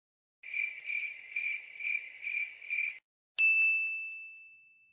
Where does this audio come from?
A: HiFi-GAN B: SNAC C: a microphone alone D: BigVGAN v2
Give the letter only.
C